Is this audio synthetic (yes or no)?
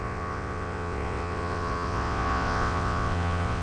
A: yes